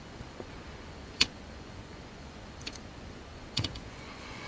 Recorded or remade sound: remade